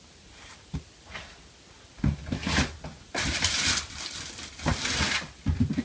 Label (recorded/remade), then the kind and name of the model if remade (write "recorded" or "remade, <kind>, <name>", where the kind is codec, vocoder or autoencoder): recorded